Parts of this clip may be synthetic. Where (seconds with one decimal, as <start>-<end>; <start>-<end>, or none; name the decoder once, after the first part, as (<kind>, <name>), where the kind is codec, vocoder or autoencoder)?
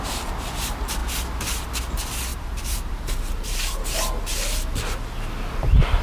2.3-3.8 (vocoder, BigVGAN v2)